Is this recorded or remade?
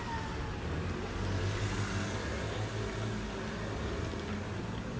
recorded